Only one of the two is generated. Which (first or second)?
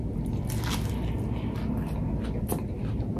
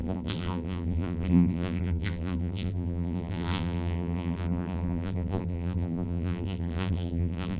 second